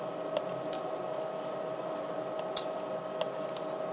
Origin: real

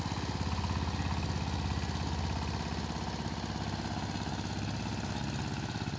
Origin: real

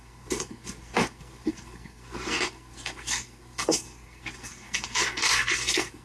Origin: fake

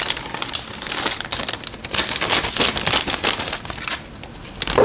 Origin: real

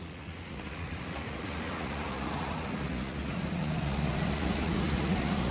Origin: fake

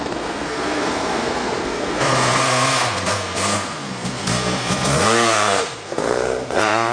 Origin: fake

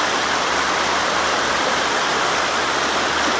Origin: real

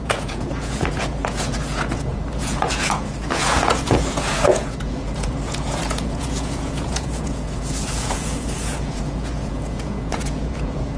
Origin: fake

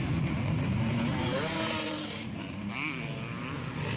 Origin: real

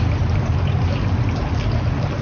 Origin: real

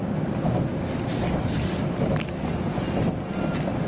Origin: real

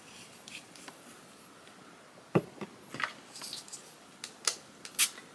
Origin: real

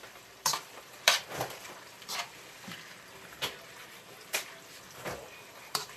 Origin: fake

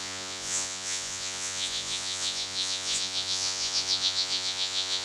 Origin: fake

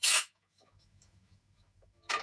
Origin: fake